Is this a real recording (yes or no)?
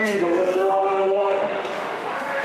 no